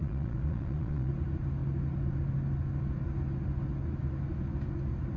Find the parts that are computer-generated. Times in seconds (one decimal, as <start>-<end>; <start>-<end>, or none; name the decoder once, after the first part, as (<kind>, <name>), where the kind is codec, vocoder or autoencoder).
0.0-1.1 (vocoder, Vocos)